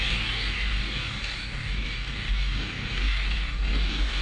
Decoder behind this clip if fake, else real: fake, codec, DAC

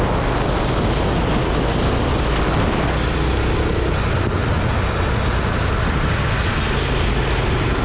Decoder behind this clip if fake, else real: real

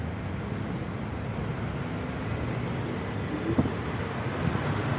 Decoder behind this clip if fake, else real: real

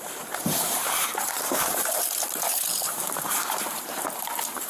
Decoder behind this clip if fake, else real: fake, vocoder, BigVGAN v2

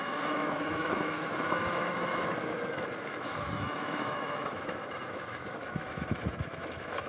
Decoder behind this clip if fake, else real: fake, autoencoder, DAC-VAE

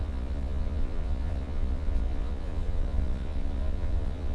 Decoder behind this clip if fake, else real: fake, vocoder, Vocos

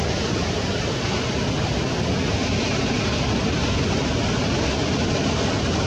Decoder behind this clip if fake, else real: real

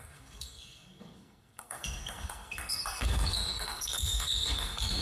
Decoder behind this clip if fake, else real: fake, codec, SNAC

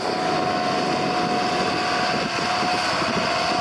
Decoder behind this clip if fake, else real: real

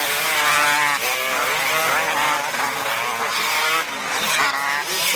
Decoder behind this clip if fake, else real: real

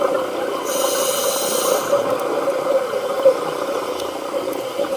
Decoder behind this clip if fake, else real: real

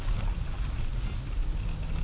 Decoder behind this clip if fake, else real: real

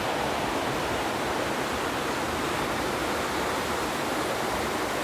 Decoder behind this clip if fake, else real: real